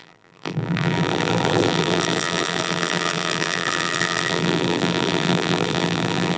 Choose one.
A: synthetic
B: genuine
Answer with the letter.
A